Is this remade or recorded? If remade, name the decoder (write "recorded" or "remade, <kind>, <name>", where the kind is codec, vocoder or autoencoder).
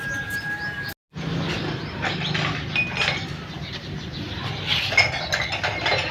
recorded